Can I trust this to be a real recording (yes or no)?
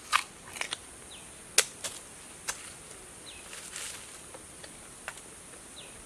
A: yes